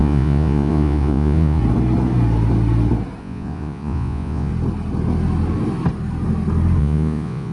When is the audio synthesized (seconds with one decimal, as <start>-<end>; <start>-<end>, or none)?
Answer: 0.0-1.6; 3.2-4.5; 6.8-7.5